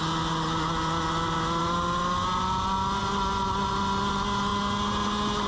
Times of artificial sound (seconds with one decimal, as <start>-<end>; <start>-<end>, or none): none